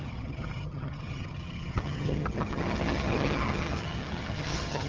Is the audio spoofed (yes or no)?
yes